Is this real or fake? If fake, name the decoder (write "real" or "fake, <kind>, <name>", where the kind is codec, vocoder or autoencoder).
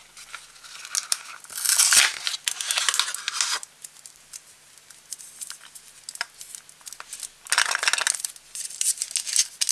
real